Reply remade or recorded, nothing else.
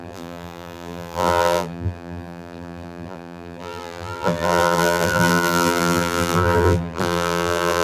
remade